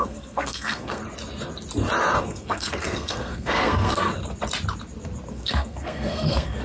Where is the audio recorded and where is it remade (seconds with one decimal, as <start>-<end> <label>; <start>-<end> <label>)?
0.0-1.0 remade; 1.0-2.2 recorded; 2.2-4.1 remade; 4.1-5.3 recorded; 5.3-6.6 remade